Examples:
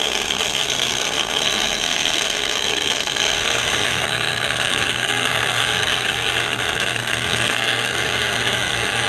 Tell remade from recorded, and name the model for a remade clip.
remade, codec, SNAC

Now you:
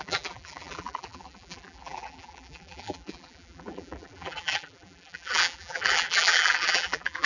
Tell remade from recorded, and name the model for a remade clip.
remade, vocoder, BigVGAN v2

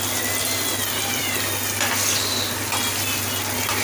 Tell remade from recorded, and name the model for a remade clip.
recorded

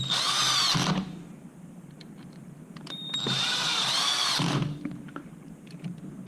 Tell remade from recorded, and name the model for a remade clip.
remade, vocoder, BigVGAN v2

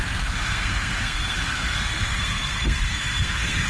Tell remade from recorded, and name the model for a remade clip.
remade, codec, SNAC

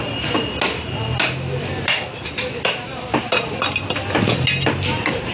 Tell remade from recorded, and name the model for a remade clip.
recorded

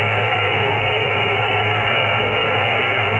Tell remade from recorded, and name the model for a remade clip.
remade, codec, SNAC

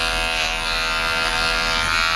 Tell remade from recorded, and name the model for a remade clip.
recorded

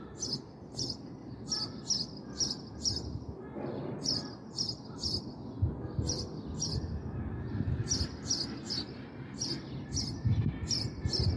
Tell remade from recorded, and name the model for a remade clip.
recorded